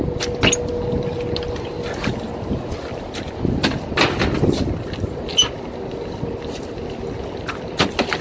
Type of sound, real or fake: real